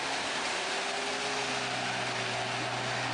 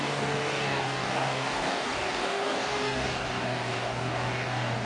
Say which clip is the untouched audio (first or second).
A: first